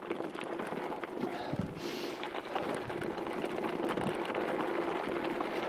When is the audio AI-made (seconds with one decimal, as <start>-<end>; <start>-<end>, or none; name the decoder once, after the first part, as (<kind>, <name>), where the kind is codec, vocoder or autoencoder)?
none